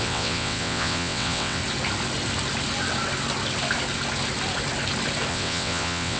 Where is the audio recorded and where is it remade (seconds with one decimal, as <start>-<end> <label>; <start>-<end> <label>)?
0.0-1.6 remade; 1.6-5.3 recorded; 5.3-6.2 remade